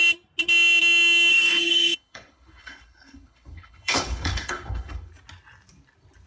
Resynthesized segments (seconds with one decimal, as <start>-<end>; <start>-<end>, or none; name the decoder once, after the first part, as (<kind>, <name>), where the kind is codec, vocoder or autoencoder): 1.3-5.1 (codec, HILCodec)